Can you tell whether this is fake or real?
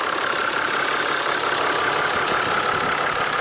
real